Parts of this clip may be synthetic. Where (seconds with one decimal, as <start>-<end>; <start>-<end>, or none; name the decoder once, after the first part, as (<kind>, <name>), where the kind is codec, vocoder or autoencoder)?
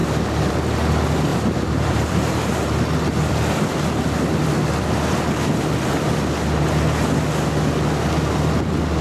1.3-2.4 (vocoder, BigVGAN v2)